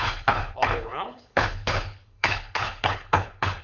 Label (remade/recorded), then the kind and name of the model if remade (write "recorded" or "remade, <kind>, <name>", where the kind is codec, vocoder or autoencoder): remade, codec, HILCodec